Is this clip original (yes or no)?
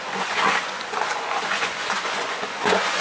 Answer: no